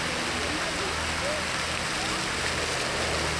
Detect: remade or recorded recorded